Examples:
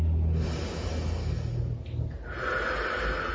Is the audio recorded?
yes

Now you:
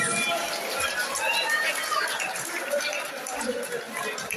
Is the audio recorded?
yes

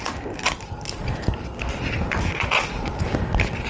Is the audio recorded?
yes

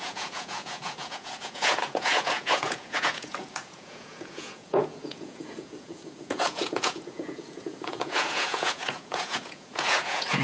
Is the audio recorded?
no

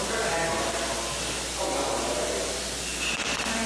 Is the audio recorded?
yes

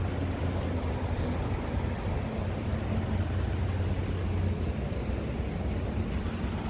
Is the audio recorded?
yes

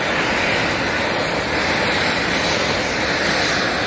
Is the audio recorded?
yes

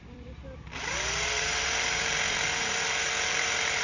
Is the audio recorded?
no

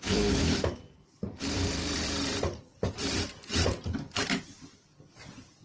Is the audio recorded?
no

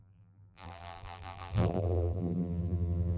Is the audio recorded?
no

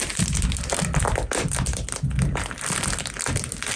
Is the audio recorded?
yes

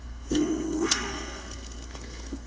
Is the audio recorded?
no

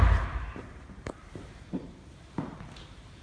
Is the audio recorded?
no